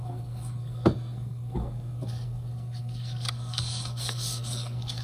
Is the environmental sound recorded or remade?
remade